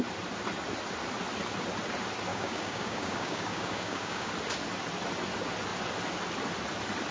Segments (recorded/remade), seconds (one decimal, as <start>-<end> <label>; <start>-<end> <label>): 0.0-2.3 recorded; 2.3-4.3 remade; 4.3-7.1 recorded